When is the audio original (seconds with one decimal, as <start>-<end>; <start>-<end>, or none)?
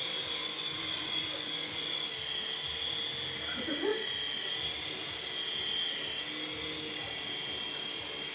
0.0-0.4; 2.1-8.3